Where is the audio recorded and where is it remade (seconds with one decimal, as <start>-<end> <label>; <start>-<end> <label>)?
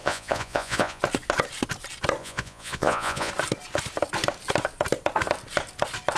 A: 0.0-1.0 remade; 1.0-2.2 recorded; 2.2-3.3 remade; 3.3-6.2 recorded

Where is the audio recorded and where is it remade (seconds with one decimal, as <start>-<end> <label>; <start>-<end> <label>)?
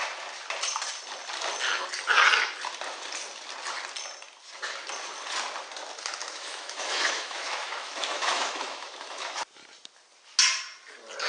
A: 0.0-6.2 recorded; 6.2-9.4 remade; 9.4-11.3 recorded